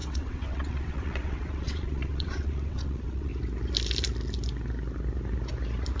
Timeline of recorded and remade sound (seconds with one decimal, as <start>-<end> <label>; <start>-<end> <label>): 0.0-3.3 remade; 3.3-6.0 recorded